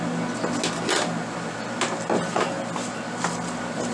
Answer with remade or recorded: recorded